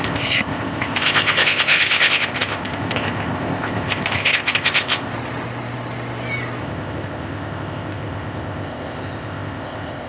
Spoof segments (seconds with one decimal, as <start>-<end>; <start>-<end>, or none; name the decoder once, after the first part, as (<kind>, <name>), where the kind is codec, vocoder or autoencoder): 0.0-5.1 (codec, ZipCodec); 6.6-10.1